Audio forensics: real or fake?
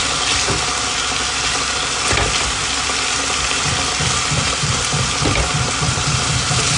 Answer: real